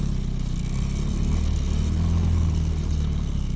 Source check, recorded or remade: recorded